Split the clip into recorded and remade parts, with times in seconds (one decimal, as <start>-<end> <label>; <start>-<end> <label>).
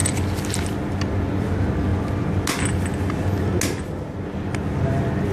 0.0-5.3 recorded